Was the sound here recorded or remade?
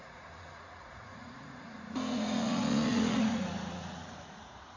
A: remade